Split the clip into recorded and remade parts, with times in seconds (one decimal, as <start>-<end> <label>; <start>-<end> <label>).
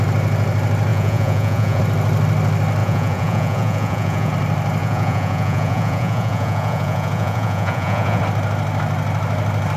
0.0-0.9 recorded; 0.9-1.8 remade; 1.8-2.8 recorded; 2.8-4.3 remade; 4.3-4.8 recorded; 4.8-8.2 remade; 8.2-9.8 recorded